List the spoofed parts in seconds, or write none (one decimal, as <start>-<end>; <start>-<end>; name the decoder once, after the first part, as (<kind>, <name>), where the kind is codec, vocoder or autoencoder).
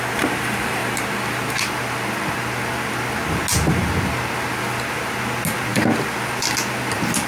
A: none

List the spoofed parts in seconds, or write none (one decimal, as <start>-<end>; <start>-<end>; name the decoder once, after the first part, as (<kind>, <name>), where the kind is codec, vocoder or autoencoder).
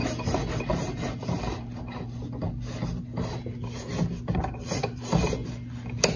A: 0.7-2.2 (vocoder, BigVGAN v2); 4.3-5.4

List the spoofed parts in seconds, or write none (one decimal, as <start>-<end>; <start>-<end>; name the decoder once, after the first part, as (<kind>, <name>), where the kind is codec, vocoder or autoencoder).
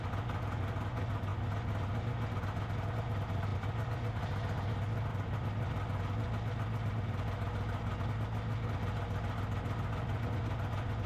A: 3.5-4.2 (vocoder, BigVGAN v2); 5.1-6.0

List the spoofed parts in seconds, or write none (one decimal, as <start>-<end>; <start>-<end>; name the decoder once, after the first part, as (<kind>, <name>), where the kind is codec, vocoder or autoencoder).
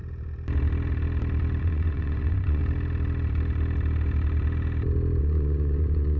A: 1.6-2.6 (vocoder, Vocos); 5.2-6.2